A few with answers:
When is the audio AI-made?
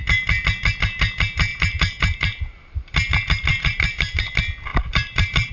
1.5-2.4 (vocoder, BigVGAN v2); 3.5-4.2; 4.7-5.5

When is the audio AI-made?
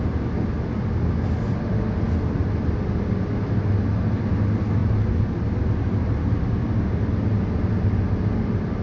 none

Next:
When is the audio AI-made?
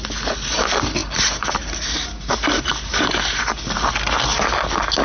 1.0-3.4 (vocoder, BigVGAN v2)